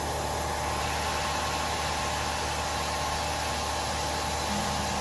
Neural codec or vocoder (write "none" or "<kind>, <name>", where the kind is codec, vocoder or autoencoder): none